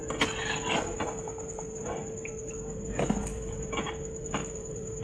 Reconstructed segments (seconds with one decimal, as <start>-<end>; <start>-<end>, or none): 4.4-5.0